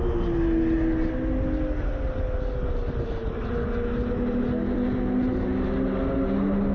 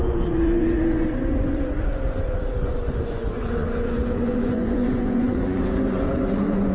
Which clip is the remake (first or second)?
second